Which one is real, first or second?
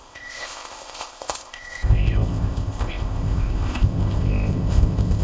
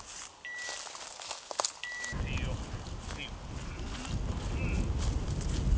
second